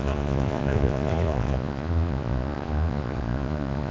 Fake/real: fake